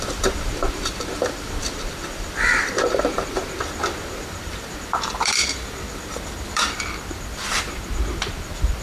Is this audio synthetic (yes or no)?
yes